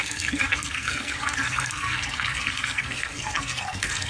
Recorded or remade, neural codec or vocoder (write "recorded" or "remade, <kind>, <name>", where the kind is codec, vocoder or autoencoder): remade, codec, SNAC